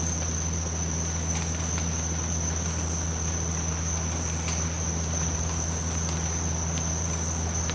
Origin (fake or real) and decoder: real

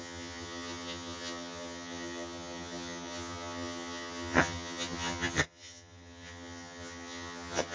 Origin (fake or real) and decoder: fake, vocoder, HiFi-GAN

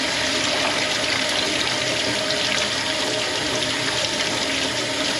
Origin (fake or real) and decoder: real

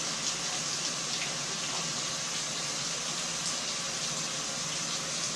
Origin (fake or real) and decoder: real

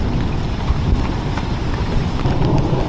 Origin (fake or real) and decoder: fake, vocoder, BigVGAN v2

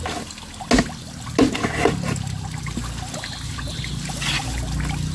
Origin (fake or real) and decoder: real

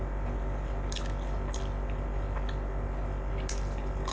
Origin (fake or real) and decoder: real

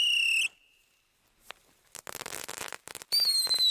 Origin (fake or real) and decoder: real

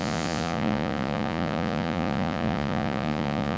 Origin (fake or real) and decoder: fake, vocoder, Vocos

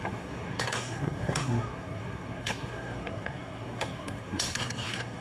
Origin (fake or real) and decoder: fake, codec, SNAC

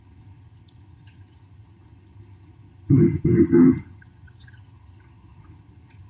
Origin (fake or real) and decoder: fake, vocoder, HiFi-GAN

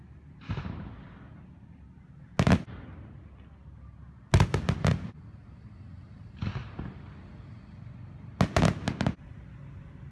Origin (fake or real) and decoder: real